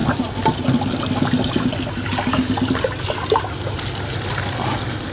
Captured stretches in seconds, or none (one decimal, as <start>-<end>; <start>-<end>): 3.1-5.1